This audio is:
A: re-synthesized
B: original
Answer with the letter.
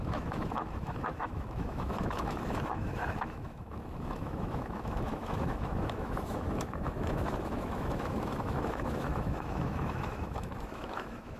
A